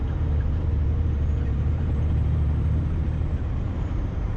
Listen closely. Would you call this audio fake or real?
fake